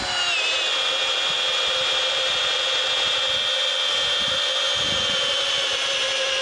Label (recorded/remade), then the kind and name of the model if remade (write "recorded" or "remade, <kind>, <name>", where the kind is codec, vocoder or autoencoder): recorded